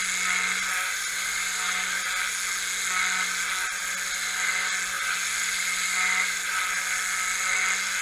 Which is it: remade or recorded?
recorded